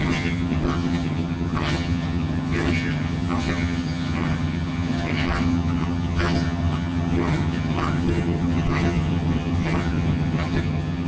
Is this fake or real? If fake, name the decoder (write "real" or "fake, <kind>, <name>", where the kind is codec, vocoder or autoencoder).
fake, vocoder, HiFi-GAN